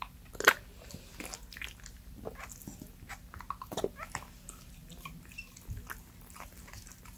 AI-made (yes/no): no